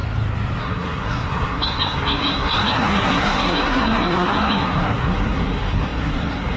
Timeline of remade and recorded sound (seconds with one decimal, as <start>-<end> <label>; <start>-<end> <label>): 0.0-0.6 recorded; 0.6-6.6 remade